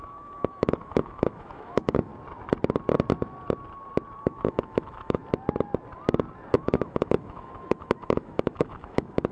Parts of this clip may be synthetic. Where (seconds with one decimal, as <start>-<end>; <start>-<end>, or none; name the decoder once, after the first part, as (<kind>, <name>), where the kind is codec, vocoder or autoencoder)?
0.0-2.1 (autoencoder, DAC-VAE); 4.2-5.2; 6.5-9.3